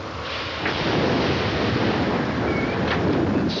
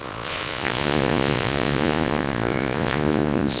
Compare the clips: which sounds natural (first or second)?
first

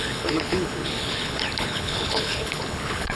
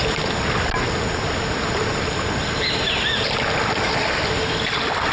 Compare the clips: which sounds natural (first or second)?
second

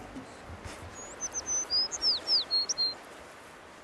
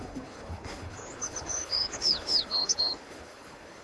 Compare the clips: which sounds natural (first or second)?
first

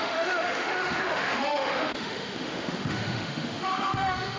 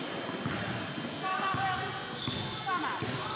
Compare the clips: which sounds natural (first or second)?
second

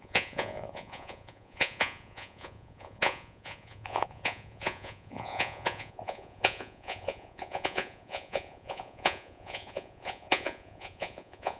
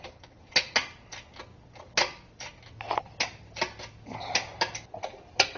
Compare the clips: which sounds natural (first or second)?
second